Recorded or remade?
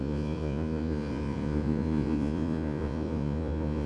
remade